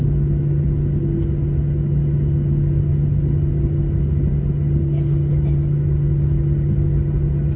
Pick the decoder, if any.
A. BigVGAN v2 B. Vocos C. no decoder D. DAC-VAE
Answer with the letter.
C